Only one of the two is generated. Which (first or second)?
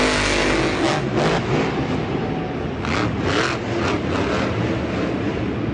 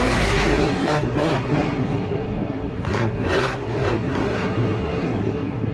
second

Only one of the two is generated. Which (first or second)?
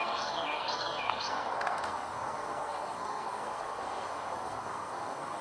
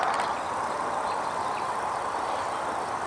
first